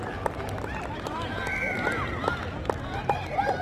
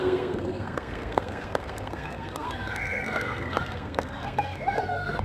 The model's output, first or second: second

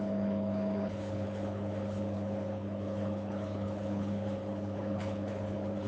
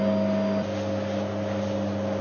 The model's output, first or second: first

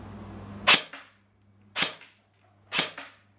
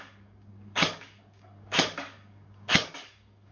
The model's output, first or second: second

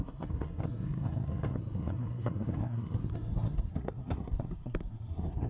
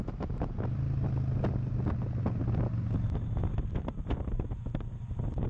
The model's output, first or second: first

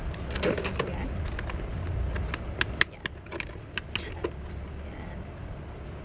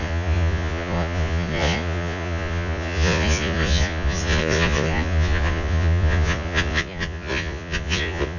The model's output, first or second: second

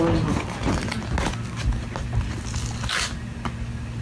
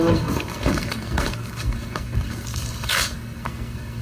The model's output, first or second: second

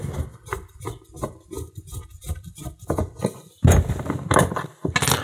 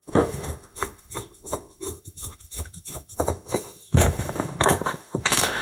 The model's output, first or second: second